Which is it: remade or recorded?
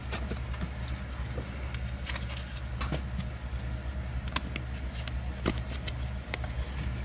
recorded